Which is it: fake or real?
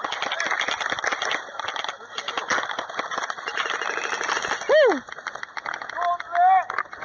real